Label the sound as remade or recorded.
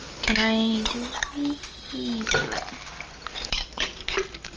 recorded